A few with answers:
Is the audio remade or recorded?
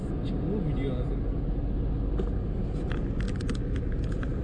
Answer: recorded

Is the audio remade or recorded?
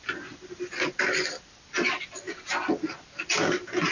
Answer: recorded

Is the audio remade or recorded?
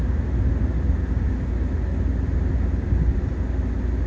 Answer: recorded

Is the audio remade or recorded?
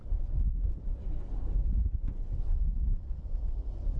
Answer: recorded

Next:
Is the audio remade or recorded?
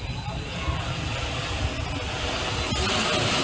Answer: recorded